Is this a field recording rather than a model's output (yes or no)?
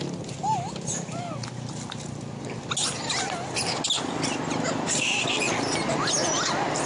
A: yes